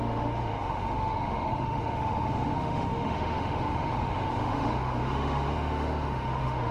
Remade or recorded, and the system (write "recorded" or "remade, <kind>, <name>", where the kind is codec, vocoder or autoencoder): remade, autoencoder, DAC-VAE